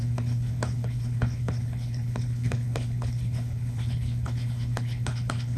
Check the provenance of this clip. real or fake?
fake